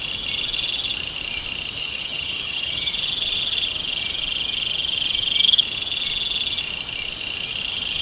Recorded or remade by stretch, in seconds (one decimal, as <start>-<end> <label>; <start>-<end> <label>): 0.0-1.8 recorded; 1.8-2.9 remade; 2.9-8.0 recorded